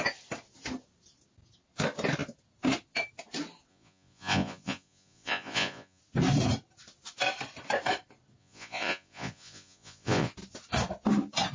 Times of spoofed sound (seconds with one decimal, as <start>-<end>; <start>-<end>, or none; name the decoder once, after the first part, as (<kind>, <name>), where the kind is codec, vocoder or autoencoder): 3.7-6.0 (vocoder, Vocos); 8.4-10.3